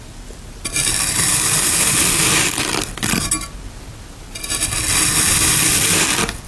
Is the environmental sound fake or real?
real